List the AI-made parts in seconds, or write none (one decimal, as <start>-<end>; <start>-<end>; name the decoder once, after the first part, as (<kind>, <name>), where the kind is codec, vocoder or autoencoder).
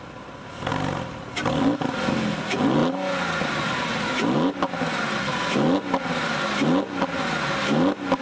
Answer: none